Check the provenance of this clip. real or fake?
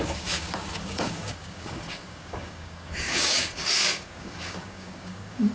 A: fake